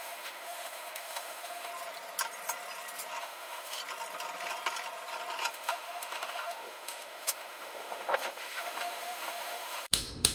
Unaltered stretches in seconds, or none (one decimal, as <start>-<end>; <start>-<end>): 1.7-3.2; 3.8-5.5